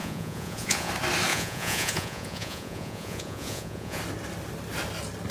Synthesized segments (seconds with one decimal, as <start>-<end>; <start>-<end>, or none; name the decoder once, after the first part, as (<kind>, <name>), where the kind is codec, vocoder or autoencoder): 0.0-0.9 (vocoder, Vocos); 1.3-4.0

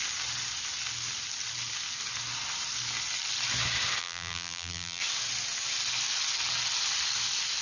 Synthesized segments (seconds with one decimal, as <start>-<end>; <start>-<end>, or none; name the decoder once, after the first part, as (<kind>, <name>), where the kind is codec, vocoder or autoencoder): 4.0-5.0 (vocoder, BigVGAN v2)